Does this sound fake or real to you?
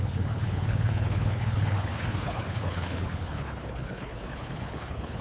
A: fake